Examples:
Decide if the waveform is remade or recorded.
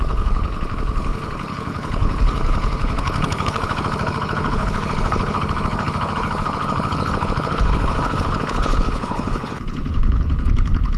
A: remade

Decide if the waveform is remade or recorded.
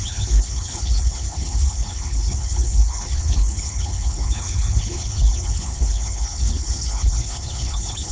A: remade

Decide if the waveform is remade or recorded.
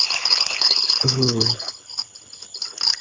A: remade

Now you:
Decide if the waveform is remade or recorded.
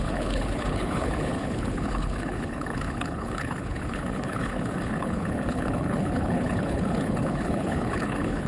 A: remade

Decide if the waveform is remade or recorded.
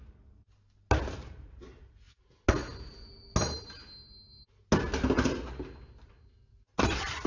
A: recorded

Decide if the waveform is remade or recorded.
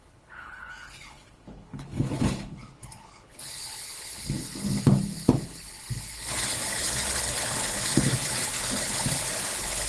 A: remade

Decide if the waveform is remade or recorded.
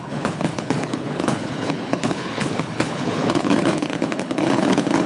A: remade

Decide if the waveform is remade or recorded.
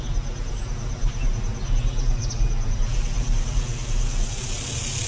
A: recorded